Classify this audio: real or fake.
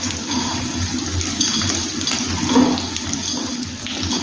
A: real